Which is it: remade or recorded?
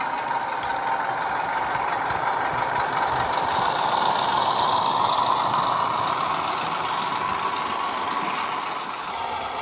recorded